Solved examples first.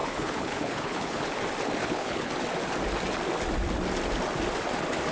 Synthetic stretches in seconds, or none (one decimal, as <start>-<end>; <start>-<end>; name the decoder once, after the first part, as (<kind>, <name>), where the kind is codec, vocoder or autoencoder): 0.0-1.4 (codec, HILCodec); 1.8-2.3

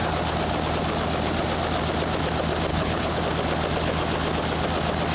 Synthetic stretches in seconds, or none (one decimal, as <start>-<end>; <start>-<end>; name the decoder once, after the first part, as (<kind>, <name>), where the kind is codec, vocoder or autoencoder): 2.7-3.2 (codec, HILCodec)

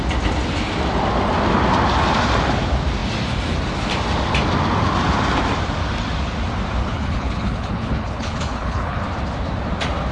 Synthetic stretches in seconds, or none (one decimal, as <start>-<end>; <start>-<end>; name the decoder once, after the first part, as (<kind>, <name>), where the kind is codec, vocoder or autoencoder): 6.8-9.0 (codec, HILCodec)